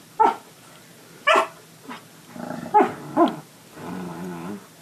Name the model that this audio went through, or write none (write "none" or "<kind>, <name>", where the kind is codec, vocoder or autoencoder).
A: none